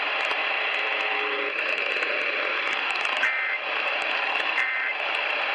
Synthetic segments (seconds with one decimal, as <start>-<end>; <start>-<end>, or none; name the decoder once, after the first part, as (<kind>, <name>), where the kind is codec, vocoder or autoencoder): 0.0-5.5 (vocoder, BigVGAN v2)